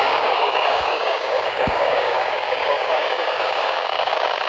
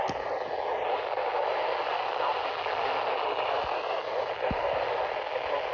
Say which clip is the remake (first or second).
first